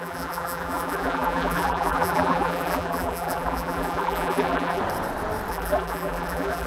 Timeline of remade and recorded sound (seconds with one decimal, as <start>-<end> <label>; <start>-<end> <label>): 0.0-4.8 remade; 4.8-5.5 recorded; 5.5-6.7 remade